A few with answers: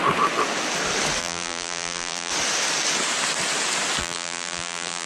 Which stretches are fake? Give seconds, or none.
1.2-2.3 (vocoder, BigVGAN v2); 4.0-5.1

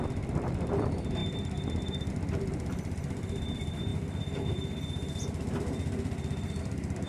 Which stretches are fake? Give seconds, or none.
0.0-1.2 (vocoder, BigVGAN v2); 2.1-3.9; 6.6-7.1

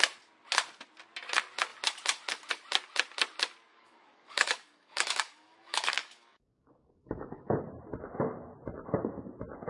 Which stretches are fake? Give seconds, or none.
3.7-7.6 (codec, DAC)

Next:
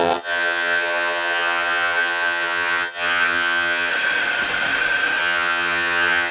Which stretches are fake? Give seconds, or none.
0.0-3.9 (vocoder, HiFi-GAN); 5.2-6.3

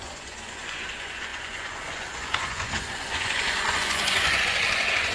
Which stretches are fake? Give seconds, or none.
0.0-5.1 (vocoder, Vocos)

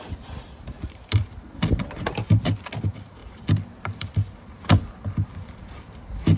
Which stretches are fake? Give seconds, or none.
none